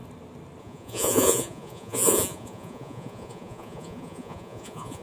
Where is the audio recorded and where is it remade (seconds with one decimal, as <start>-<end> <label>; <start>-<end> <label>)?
0.0-0.6 recorded; 0.6-5.0 remade